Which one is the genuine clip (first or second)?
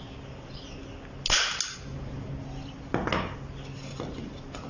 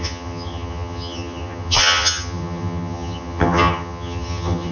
first